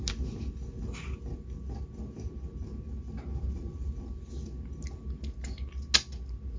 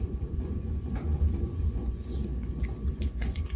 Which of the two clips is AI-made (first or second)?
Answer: second